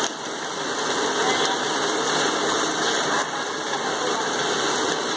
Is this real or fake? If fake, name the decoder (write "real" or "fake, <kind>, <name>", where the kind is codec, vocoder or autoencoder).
real